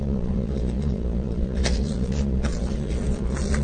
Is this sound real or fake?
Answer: fake